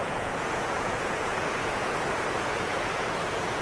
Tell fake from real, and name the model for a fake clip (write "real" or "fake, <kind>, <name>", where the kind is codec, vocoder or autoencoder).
fake, vocoder, Vocos